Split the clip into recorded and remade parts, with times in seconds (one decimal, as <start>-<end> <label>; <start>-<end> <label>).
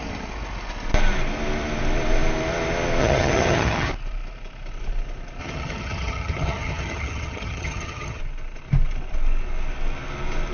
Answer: 0.0-3.0 recorded; 3.0-3.9 remade; 3.9-5.4 recorded; 5.4-8.2 remade; 8.2-10.5 recorded